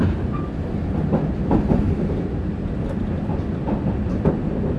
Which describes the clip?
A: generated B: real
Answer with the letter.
B